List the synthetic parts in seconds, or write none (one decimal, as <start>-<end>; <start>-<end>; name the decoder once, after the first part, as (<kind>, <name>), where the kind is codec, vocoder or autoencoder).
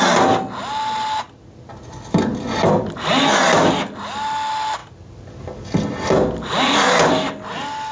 none